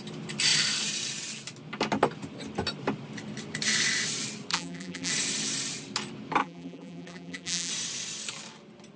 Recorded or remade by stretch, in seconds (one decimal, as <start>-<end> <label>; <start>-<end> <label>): 0.0-4.5 recorded; 4.5-5.1 remade; 5.1-6.4 recorded; 6.4-7.7 remade; 7.7-9.0 recorded